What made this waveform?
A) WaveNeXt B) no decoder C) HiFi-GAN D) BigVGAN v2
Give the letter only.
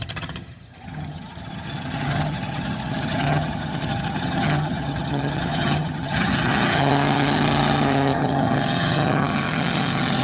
C